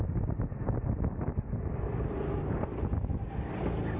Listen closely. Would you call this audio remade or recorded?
recorded